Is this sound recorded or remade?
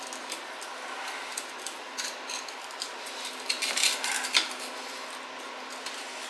recorded